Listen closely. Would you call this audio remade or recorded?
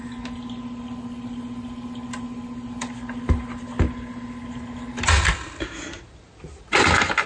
recorded